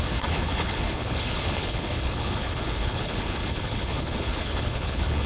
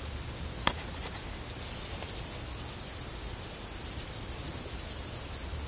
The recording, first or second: second